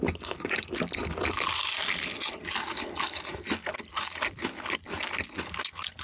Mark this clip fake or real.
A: real